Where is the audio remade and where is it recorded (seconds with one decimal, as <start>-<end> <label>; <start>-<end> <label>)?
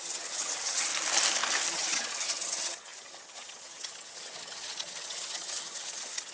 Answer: 0.0-0.9 remade; 0.9-1.7 recorded; 1.7-6.3 remade